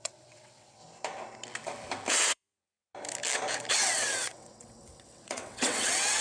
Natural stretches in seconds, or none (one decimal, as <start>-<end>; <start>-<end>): 0.8-2.1; 2.9-3.7